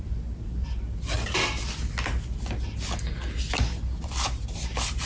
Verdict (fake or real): real